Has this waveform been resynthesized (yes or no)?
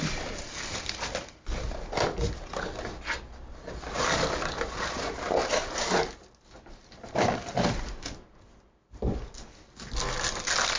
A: no